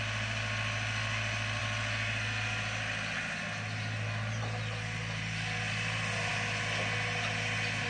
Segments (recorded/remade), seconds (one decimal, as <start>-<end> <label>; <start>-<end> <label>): 0.0-7.9 recorded